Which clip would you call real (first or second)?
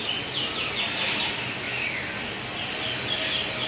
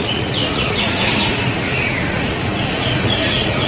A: first